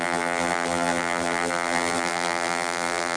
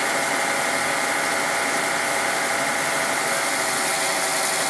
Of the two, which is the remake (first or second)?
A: first